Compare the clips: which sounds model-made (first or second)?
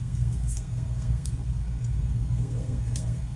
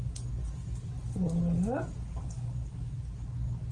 first